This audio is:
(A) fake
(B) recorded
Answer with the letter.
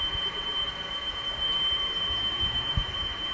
A